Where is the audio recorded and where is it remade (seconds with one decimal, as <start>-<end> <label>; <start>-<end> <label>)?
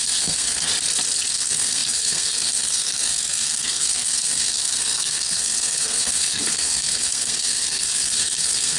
0.0-0.7 remade; 0.7-1.3 recorded; 1.3-8.8 remade